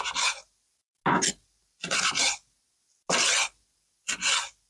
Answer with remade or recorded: recorded